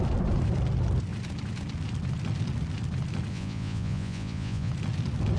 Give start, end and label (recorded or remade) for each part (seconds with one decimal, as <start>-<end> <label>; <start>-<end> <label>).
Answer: 0.0-3.3 recorded; 3.3-4.7 remade; 4.7-5.4 recorded